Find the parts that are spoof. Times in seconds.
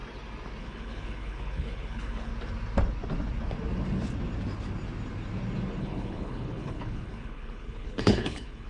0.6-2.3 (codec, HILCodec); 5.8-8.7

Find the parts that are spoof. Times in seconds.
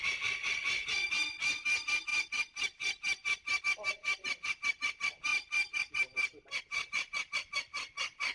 none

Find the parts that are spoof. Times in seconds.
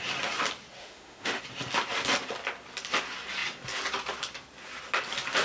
0.8-1.4 (autoencoder, DAC-VAE)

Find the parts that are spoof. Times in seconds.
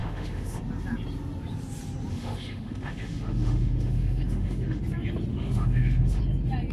0.0-0.6 (autoencoder, DAC-VAE); 2.1-4.8; 5.3-6.2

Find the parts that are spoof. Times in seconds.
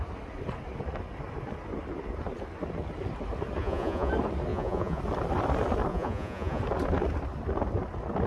3.6-4.1 (vocoder, Vocos); 4.5-5.0; 5.9-6.6